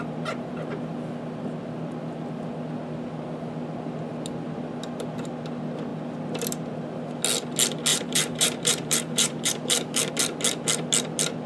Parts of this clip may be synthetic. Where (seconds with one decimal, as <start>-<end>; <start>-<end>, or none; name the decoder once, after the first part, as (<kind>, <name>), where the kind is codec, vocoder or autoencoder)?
7.9-10.1 (vocoder, BigVGAN v2)